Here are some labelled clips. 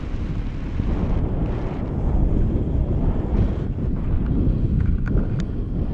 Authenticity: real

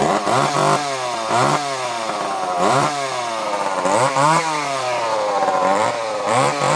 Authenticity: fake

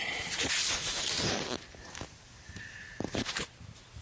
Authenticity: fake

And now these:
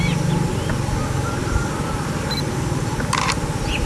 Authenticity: real